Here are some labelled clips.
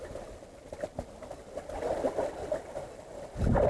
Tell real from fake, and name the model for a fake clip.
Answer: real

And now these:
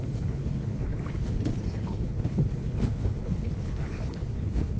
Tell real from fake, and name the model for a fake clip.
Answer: fake, codec, HILCodec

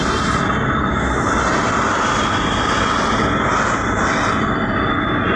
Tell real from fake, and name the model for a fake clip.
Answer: real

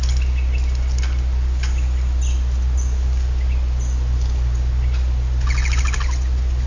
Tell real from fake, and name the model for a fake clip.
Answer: real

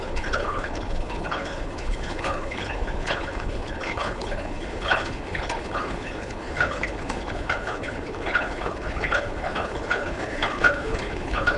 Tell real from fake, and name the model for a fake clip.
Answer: fake, codec, HILCodec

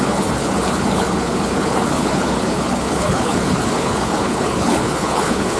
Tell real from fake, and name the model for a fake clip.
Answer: fake, codec, HILCodec